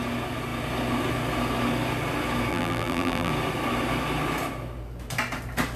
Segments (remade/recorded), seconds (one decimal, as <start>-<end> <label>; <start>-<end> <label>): 0.0-2.5 recorded; 2.5-3.3 remade; 3.3-5.8 recorded